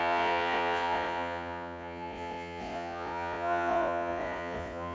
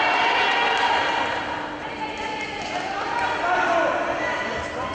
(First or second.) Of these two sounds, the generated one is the first